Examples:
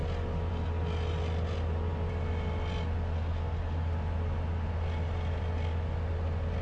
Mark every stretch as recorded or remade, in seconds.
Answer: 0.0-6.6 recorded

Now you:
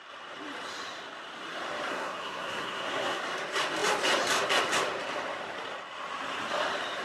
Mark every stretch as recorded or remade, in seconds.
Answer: 0.0-1.9 recorded; 1.9-3.2 remade; 3.2-7.0 recorded